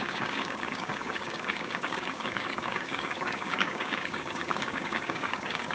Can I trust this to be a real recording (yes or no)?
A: no